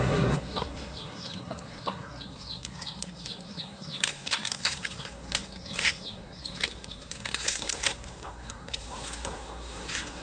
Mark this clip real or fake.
fake